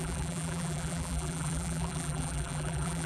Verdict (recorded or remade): remade